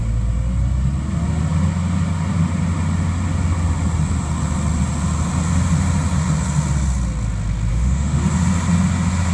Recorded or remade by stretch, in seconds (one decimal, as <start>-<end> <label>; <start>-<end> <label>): 0.0-7.7 recorded; 7.7-8.2 remade; 8.2-9.3 recorded